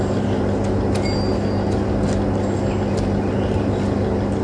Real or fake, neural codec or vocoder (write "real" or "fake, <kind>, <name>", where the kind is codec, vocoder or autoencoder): real